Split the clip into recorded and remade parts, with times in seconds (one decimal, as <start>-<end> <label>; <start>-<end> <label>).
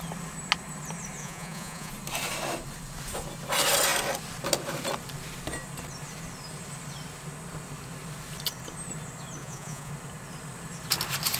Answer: 0.0-1.2 recorded; 1.2-1.9 remade; 1.9-9.4 recorded; 9.4-9.9 remade; 9.9-11.4 recorded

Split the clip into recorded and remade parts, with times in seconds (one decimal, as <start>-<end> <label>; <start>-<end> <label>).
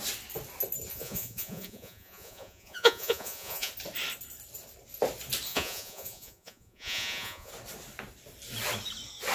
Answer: 0.0-0.9 recorded; 0.9-3.7 remade; 3.7-5.5 recorded; 5.5-7.5 remade; 7.5-9.3 recorded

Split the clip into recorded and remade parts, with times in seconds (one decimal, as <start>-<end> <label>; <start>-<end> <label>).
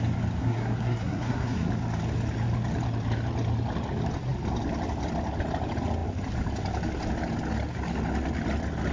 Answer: 0.0-0.4 recorded; 0.4-1.7 remade; 1.7-8.9 recorded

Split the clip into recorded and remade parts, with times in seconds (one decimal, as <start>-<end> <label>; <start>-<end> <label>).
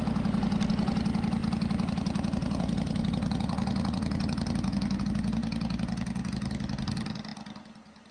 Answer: 0.0-1.4 recorded; 1.4-5.0 remade; 5.0-8.1 recorded